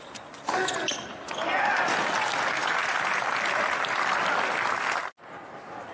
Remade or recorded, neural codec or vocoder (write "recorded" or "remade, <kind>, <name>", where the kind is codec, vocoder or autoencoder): recorded